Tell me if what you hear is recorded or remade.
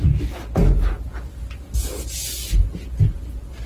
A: recorded